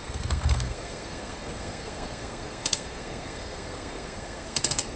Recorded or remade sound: remade